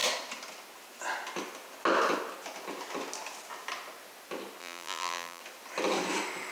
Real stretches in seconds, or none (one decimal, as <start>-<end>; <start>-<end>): 0.0-4.6; 5.4-6.5